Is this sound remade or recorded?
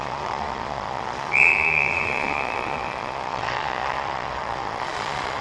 remade